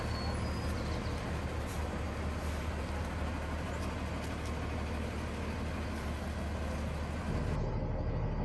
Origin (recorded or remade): recorded